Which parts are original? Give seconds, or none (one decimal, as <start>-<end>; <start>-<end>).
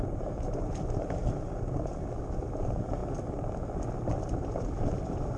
1.2-2.6; 3.0-4.3